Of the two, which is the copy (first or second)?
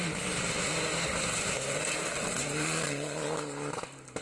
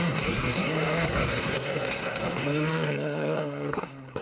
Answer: second